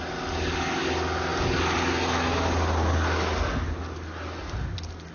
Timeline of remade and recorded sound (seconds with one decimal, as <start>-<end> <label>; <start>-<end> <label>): 0.0-5.1 recorded